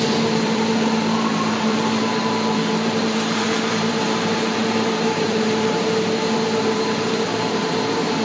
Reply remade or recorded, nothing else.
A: remade